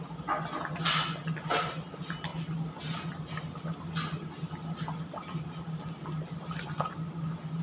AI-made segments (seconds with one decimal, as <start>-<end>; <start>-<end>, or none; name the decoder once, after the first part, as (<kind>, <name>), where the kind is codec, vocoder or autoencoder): none